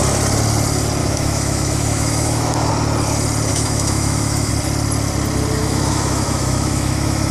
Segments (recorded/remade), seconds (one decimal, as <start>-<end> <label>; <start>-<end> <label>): 0.0-1.0 recorded; 1.0-2.7 remade; 2.7-3.5 recorded; 3.5-4.5 remade; 4.5-5.6 recorded; 5.6-7.3 remade